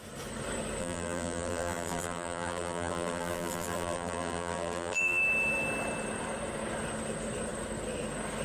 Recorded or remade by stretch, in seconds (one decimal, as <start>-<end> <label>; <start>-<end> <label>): 0.0-0.8 recorded; 0.8-5.2 remade; 5.2-8.4 recorded